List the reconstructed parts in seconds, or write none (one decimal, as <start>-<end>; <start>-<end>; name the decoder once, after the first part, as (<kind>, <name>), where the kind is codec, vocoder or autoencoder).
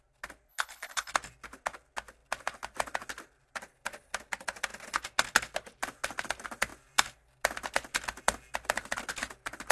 0.5-1.1 (codec, HILCodec)